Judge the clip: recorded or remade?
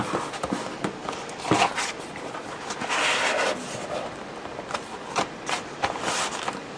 recorded